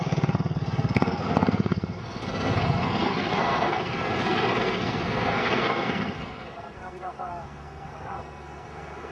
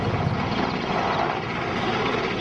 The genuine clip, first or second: second